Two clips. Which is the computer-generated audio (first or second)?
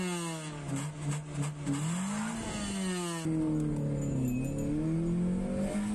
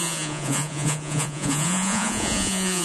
second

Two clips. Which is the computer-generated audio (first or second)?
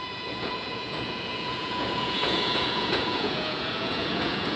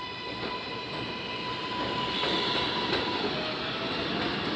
first